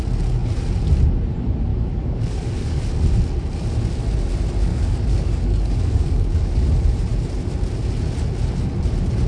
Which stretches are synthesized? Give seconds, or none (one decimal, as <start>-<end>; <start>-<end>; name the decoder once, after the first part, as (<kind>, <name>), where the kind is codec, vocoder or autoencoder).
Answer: 1.7-2.8 (codec, DAC); 4.7-6.6